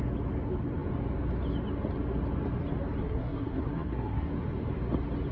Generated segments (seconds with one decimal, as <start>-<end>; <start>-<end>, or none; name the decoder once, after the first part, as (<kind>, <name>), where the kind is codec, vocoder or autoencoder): 3.0-4.3 (codec, SNAC)